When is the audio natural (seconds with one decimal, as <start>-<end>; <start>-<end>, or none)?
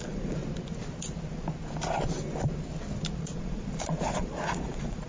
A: 0.4-3.2